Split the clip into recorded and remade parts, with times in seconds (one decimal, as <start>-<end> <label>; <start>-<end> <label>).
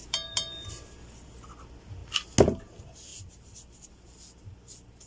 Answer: 0.0-0.7 remade; 0.7-3.1 recorded; 3.1-5.1 remade